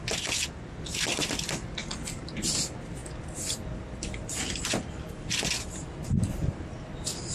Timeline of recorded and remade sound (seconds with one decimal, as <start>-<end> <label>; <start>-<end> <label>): 0.0-1.1 recorded; 1.1-1.8 remade; 1.8-7.3 recorded